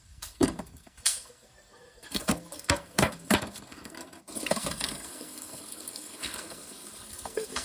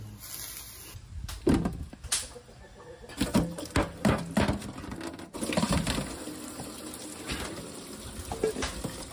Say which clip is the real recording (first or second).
second